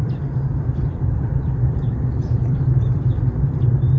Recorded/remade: remade